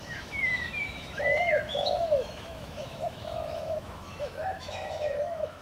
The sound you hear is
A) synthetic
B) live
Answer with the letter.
A